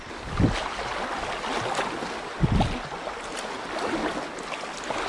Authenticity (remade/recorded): recorded